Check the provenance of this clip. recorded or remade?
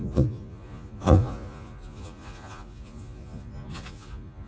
remade